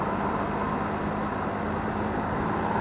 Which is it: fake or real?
real